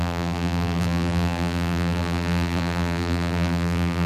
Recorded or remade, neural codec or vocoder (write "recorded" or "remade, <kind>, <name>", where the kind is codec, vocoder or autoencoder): remade, vocoder, BigVGAN v2